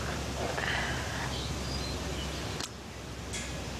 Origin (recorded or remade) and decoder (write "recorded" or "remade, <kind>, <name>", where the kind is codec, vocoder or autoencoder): recorded